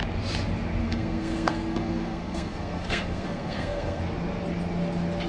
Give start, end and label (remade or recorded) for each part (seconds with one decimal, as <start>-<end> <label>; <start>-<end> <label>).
0.0-0.8 recorded; 0.8-4.0 remade; 4.0-5.3 recorded